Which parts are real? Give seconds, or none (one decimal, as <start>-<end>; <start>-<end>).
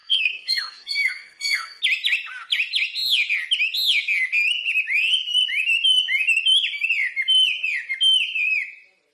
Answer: 1.8-9.1